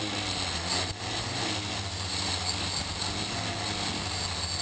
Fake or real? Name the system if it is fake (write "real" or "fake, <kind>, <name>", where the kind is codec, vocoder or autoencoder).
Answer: real